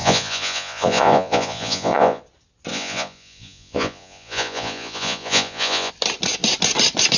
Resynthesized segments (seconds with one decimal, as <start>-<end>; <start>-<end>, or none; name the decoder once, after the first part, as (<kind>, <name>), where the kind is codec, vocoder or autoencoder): 0.0-2.2 (vocoder, Vocos); 2.7-5.9